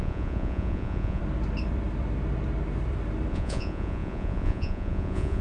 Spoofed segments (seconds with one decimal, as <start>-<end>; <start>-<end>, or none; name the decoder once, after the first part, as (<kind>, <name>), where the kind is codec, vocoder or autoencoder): 0.0-1.2 (vocoder, Vocos); 3.3-5.4